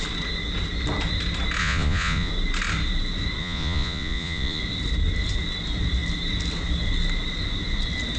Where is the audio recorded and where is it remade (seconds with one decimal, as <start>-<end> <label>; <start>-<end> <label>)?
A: 0.0-1.6 recorded; 1.6-2.3 remade; 2.3-3.4 recorded; 3.4-4.6 remade; 4.6-8.2 recorded